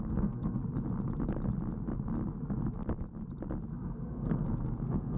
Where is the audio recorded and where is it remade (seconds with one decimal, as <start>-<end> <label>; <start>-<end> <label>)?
0.0-0.6 remade; 0.6-3.7 recorded; 3.7-5.2 remade